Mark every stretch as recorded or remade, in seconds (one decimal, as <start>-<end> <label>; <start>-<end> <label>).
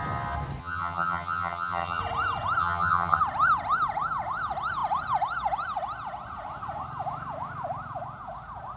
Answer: 0.0-0.6 recorded; 0.6-2.0 remade; 2.0-2.6 recorded; 2.6-3.2 remade; 3.2-8.8 recorded